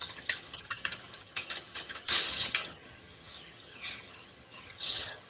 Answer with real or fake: fake